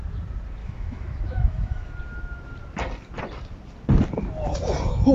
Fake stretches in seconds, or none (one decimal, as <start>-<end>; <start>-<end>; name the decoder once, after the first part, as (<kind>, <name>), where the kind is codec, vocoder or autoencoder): 0.6-1.9 (autoencoder, DAC-VAE)